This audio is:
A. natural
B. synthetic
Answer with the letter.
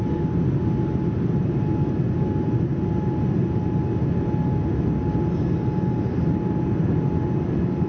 A